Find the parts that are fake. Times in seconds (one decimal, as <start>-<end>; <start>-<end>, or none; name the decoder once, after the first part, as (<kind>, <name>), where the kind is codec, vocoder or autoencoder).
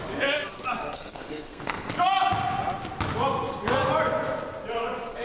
0.8-1.9 (codec, SNAC)